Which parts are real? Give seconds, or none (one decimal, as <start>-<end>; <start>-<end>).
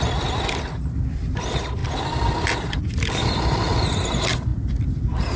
0.0-5.4